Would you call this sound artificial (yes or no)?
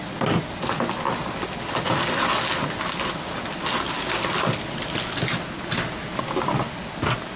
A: no